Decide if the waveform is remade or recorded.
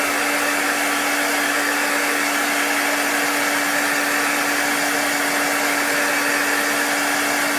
recorded